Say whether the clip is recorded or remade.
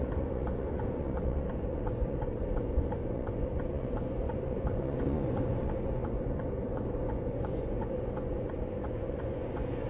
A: remade